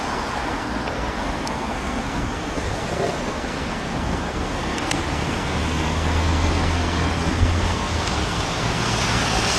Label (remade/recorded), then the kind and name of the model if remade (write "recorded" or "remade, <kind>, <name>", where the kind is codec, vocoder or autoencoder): remade, codec, SNAC